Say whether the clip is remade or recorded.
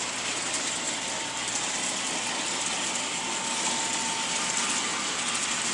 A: recorded